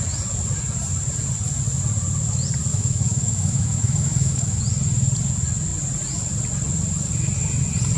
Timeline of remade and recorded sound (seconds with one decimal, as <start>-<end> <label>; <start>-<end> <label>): 0.0-2.7 recorded; 2.7-4.6 remade; 4.6-8.0 recorded